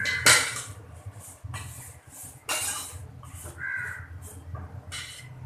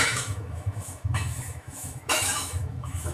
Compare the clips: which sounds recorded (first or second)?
first